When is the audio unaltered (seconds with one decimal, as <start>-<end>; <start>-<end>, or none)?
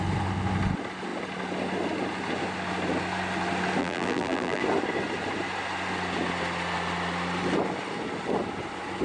0.0-3.8; 4.6-9.0